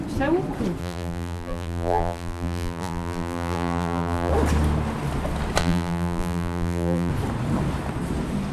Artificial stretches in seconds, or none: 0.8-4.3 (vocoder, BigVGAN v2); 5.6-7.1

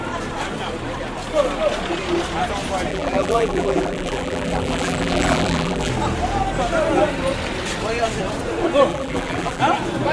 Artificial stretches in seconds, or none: 2.9-5.9 (vocoder, BigVGAN v2); 8.9-9.6

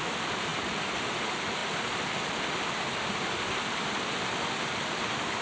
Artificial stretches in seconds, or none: none

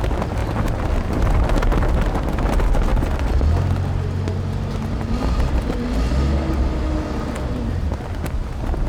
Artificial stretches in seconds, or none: none

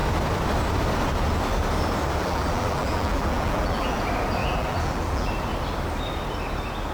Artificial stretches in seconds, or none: 2.2-4.0 (vocoder, BigVGAN v2); 4.4-5.3

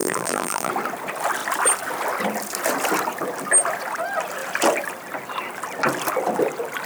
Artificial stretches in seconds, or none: 0.0-0.7 (vocoder, BigVGAN v2)

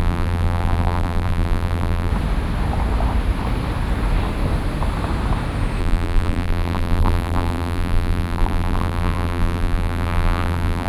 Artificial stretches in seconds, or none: 0.0-2.1 (vocoder, BigVGAN v2); 5.8-10.9